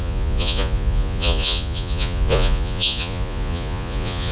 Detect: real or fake fake